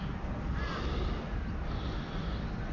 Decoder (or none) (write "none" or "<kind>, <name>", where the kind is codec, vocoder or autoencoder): none